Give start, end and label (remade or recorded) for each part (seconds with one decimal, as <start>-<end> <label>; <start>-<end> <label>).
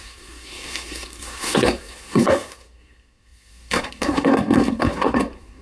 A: 0.0-5.6 remade